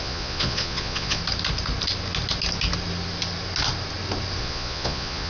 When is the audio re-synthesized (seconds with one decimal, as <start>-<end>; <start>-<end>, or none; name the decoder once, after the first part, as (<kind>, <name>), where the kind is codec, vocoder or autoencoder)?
0.0-1.2 (vocoder, Vocos); 4.4-5.3